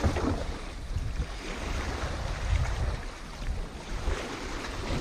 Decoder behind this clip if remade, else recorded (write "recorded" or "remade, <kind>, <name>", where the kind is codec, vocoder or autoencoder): recorded